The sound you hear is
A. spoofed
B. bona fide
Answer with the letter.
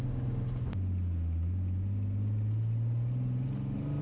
B